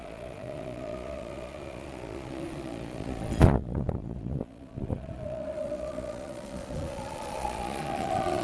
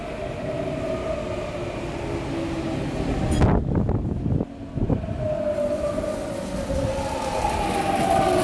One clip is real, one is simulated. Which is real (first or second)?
second